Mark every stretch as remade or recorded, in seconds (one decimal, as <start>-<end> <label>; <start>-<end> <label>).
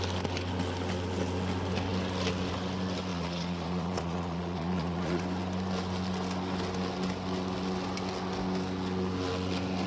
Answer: 0.0-3.1 recorded; 3.1-5.2 remade; 5.2-9.9 recorded